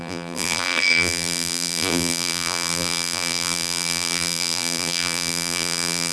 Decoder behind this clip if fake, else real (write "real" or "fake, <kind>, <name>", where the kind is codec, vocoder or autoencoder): fake, vocoder, BigVGAN v2